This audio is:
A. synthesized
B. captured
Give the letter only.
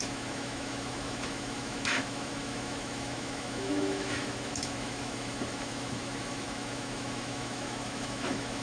A